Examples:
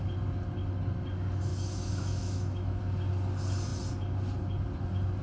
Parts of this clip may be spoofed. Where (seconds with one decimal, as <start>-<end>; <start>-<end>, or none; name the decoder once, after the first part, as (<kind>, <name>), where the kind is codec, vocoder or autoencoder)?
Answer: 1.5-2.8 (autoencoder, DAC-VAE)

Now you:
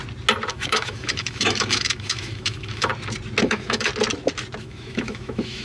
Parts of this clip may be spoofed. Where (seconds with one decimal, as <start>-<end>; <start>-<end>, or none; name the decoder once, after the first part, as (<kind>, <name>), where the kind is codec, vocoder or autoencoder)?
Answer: 0.5-2.9 (autoencoder, DAC-VAE); 3.4-3.9; 4.6-5.6

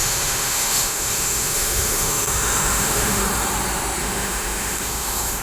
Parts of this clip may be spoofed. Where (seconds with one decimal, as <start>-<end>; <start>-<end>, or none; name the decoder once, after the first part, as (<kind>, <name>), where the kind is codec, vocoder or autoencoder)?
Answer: 0.0-3.2 (autoencoder, DAC-VAE); 4.0-5.4

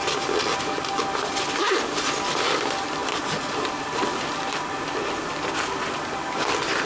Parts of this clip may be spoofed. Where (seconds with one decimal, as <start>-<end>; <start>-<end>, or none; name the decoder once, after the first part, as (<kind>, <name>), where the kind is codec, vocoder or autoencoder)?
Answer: none

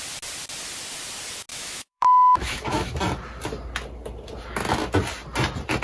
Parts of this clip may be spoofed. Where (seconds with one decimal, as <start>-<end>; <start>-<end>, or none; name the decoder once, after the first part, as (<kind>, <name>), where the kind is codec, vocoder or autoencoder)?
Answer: 1.5-2.9 (autoencoder, DAC-VAE)